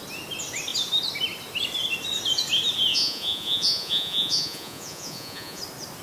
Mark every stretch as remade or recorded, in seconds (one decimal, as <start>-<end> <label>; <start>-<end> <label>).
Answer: 0.0-2.9 recorded; 2.9-5.6 remade; 5.6-6.0 recorded